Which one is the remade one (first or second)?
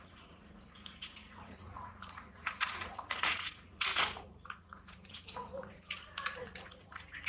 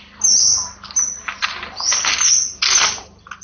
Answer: first